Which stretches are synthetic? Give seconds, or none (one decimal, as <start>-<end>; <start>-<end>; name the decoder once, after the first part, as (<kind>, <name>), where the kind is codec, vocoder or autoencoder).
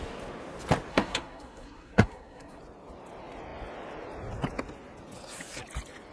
0.9-2.6 (codec, SNAC)